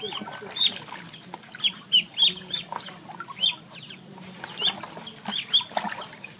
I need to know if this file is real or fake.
real